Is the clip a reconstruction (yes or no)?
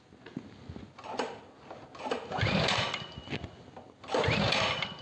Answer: no